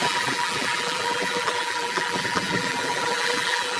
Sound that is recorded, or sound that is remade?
remade